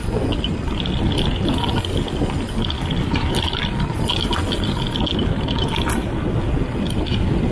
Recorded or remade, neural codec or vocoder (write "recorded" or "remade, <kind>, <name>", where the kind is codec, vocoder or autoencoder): recorded